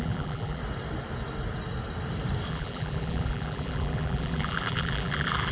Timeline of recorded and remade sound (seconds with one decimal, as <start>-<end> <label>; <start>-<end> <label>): 0.0-0.6 remade; 0.6-2.5 recorded; 2.5-5.5 remade